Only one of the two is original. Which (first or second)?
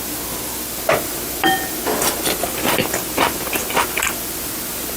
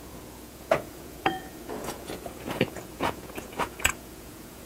first